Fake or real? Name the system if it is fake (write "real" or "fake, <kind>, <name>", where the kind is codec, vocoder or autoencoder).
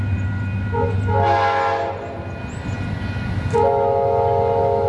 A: real